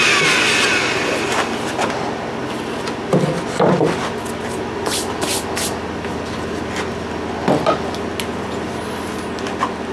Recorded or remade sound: recorded